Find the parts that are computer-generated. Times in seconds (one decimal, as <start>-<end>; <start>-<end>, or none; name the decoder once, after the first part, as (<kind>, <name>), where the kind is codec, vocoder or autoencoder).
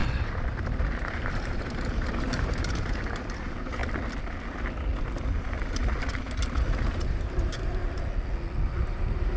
0.0-3.8 (vocoder, BigVGAN v2); 5.0-5.8; 6.9-7.8; 8.8-9.4